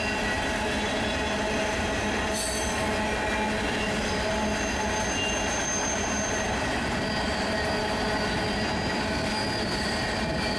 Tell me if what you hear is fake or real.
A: real